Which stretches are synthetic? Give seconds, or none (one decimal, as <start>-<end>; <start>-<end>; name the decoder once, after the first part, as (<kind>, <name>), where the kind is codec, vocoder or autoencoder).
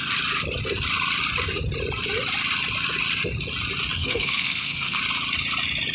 4.0-5.0 (codec, SNAC)